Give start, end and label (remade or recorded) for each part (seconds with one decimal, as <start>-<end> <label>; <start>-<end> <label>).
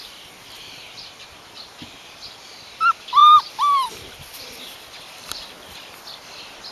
0.0-6.7 recorded